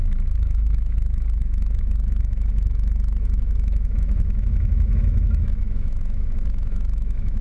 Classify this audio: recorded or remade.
remade